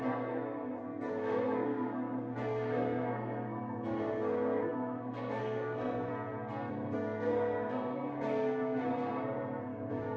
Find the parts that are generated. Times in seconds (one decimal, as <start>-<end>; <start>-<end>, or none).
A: 0.0-6.1; 6.7-10.2